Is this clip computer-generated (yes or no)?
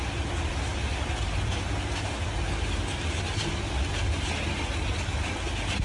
no